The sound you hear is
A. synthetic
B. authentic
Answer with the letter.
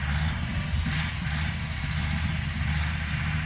B